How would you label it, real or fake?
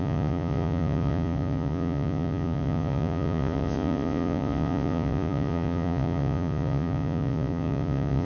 fake